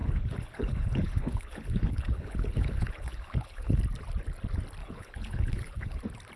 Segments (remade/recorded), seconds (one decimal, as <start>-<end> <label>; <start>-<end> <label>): 0.0-3.8 remade; 3.8-4.8 recorded; 4.8-6.0 remade; 6.0-6.4 recorded